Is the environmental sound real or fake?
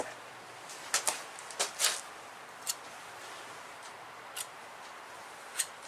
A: real